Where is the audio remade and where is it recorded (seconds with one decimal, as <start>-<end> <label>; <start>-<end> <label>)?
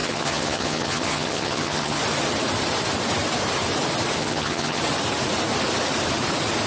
0.0-2.0 remade; 2.0-4.2 recorded; 4.2-4.8 remade; 4.8-6.7 recorded